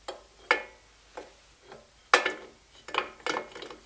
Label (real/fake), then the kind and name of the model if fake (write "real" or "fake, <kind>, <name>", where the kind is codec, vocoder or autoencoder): real